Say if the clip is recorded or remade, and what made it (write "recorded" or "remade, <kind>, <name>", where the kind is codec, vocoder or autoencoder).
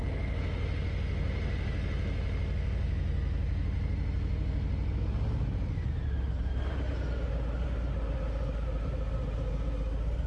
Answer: recorded